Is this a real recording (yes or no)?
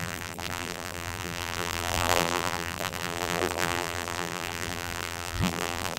no